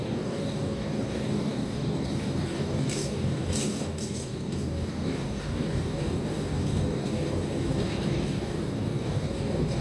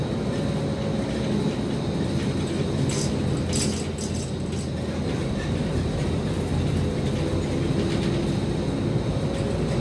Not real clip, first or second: first